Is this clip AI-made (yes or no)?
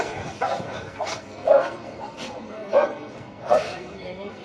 yes